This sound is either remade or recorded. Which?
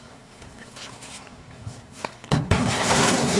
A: remade